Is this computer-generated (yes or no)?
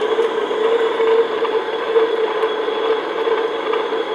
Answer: yes